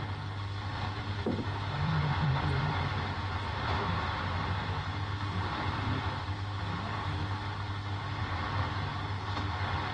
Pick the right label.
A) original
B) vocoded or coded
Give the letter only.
B